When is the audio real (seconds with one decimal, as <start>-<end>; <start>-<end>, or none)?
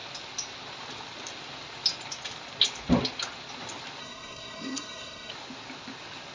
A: 0.0-4.0; 5.3-6.3